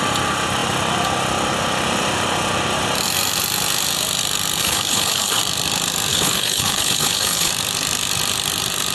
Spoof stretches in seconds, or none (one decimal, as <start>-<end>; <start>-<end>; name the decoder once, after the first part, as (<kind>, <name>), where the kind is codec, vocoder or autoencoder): 4.6-5.4 (codec, HILCodec); 6.1-7.5